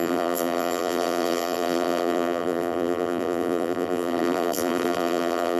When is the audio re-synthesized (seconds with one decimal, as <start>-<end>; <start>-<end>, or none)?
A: 0.0-5.6